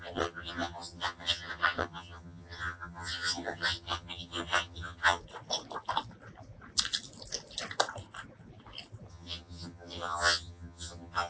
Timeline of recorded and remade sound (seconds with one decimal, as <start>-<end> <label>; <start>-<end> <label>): 0.0-5.2 remade; 5.2-9.1 recorded; 9.1-11.3 remade